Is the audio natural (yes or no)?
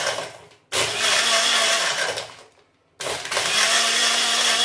yes